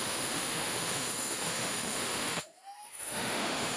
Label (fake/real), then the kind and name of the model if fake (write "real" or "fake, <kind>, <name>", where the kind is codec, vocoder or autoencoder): fake, autoencoder, DAC-VAE